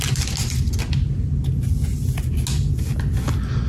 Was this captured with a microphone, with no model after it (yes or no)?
yes